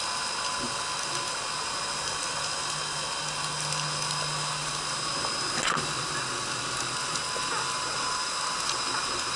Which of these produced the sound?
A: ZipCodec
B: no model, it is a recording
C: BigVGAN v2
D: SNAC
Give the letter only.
B